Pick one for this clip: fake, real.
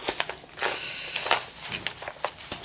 real